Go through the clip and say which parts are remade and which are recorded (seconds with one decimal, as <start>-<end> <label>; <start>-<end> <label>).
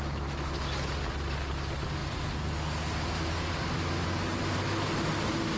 0.0-5.6 recorded